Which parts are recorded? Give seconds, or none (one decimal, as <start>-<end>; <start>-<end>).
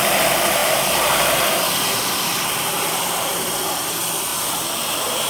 0.0-0.6; 3.8-4.3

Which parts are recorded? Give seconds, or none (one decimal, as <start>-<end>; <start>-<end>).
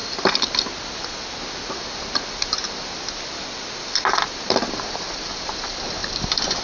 0.0-4.0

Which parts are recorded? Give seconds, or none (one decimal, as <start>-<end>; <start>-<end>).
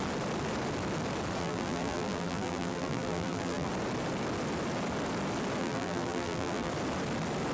0.0-1.4; 3.7-5.6; 6.7-7.5